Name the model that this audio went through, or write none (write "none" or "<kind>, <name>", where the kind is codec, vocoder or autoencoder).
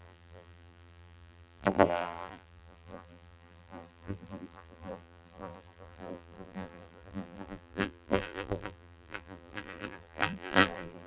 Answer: vocoder, BigVGAN v2